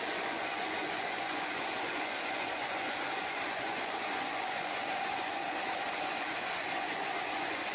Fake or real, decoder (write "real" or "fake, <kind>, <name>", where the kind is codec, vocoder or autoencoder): fake, vocoder, Vocos